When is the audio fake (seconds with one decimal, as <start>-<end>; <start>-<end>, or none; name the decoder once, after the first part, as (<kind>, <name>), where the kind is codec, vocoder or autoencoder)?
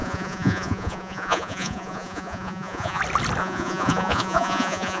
0.0-3.0 (vocoder, Vocos); 3.4-5.0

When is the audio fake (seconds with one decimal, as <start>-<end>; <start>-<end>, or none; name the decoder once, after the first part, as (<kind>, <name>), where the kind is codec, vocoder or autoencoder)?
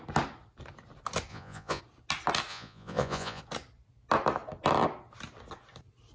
1.3-1.8 (vocoder, Vocos); 2.5-3.4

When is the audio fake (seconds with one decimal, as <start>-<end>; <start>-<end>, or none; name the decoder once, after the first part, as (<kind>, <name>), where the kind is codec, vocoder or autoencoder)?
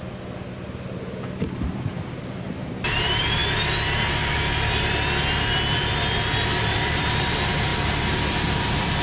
none